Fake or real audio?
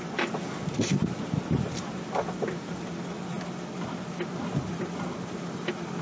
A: real